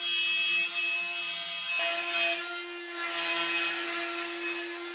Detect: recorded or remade recorded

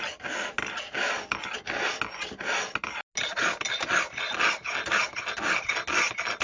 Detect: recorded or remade recorded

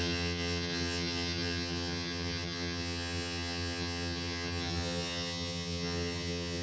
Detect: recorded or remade remade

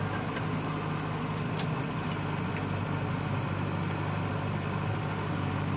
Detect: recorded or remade recorded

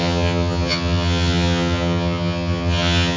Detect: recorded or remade remade